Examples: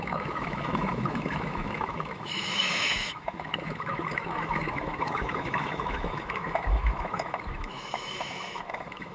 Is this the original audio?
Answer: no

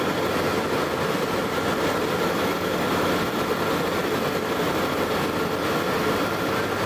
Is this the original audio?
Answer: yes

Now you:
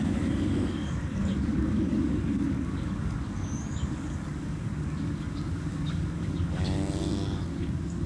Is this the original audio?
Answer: no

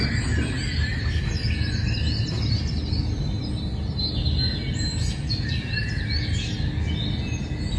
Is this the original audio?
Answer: yes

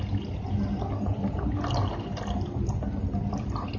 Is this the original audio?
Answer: yes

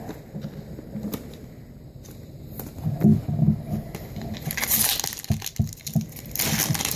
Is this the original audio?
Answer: yes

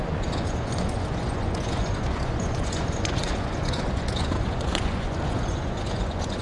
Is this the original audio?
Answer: no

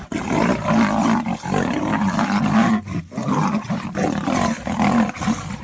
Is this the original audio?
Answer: yes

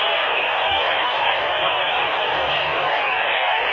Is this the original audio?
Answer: no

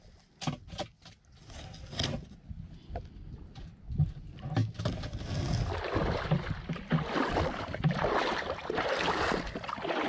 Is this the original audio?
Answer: yes